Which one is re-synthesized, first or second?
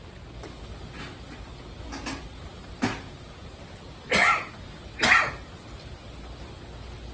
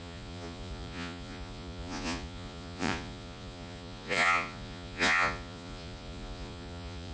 second